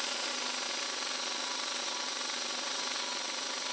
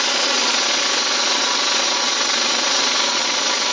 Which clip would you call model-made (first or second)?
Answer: second